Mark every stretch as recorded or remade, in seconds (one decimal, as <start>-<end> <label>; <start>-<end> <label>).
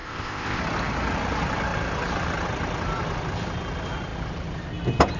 0.0-0.6 remade; 0.6-5.2 recorded